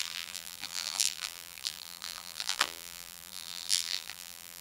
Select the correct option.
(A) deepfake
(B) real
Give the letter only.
A